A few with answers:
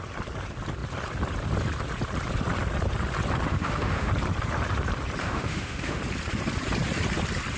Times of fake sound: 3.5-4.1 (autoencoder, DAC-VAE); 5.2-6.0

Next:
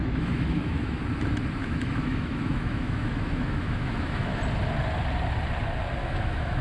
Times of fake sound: 0.0-1.0 (autoencoder, DAC-VAE); 1.6-4.4; 6.0-6.6

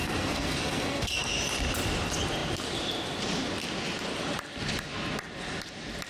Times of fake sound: 0.0-1.3 (codec, SNAC)

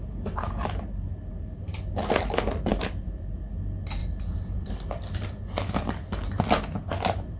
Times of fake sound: 2.7-3.3 (vocoder, BigVGAN v2); 4.0-6.4